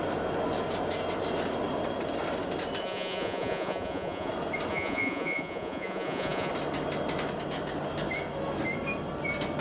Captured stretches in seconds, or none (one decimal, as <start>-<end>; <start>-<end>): 0.0-2.8; 4.3-4.7; 6.5-9.6